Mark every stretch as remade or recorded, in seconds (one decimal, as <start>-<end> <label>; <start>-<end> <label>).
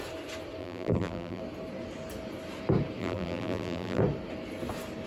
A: 0.0-0.6 recorded; 0.6-1.4 remade; 1.4-3.0 recorded; 3.0-4.0 remade; 4.0-5.1 recorded